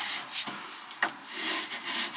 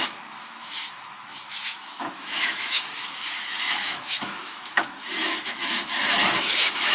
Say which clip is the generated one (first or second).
second